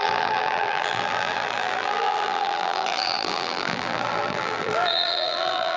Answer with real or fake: fake